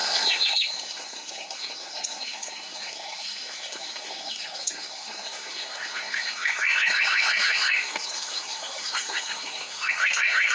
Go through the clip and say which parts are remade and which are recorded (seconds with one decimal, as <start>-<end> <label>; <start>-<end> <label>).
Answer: 0.0-10.5 remade